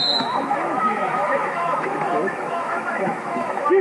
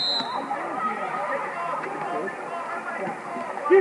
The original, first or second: second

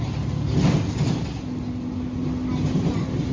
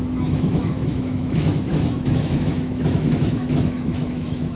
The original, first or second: first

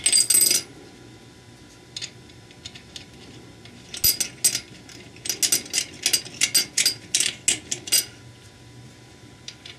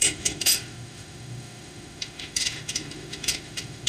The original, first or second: first